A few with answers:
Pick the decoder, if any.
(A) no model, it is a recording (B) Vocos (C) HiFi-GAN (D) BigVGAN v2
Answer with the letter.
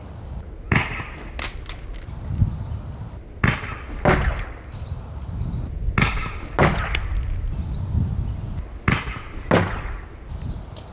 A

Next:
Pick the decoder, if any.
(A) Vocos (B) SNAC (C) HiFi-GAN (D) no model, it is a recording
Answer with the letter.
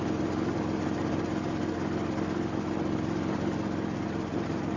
D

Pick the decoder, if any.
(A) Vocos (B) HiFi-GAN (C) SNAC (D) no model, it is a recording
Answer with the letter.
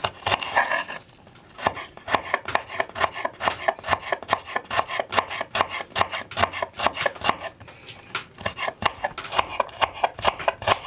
D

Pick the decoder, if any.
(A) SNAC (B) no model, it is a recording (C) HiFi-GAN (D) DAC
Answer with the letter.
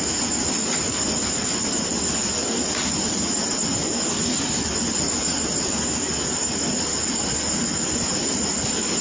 B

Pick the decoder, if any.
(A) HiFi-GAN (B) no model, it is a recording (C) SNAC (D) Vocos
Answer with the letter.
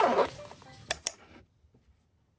B